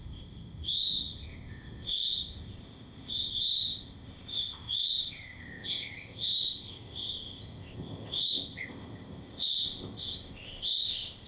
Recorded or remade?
remade